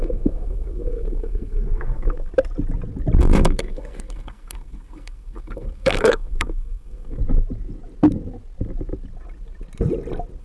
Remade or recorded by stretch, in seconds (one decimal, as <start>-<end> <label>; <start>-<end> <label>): 0.0-2.3 remade; 2.3-3.2 recorded; 3.2-7.2 remade; 7.2-10.4 recorded